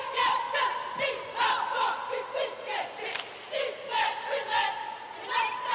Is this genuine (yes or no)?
yes